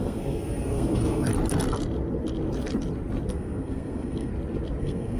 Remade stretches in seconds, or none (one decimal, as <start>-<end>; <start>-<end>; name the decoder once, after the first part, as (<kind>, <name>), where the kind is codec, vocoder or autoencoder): 0.0-1.3 (codec, SNAC); 3.3-4.3; 4.8-5.2